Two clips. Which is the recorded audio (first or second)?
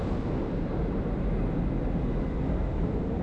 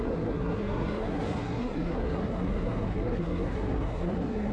first